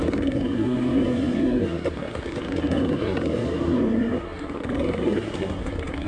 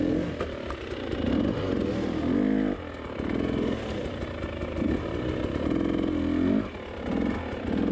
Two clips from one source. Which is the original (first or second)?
second